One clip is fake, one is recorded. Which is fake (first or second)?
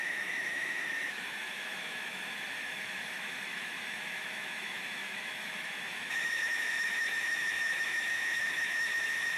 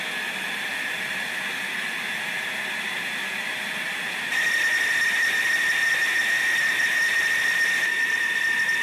first